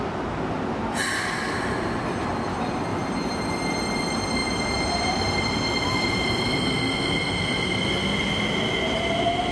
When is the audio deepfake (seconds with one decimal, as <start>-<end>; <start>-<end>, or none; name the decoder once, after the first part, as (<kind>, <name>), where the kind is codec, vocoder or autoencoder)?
2.9-3.5 (vocoder, BigVGAN v2); 4.4-6.5